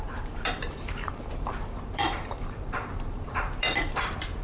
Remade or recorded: remade